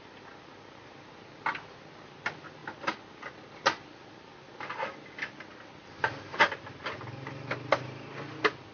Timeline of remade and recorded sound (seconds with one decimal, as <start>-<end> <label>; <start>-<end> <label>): 0.0-8.7 recorded